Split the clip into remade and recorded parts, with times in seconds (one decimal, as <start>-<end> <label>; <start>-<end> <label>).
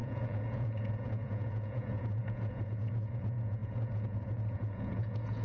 0.0-5.4 remade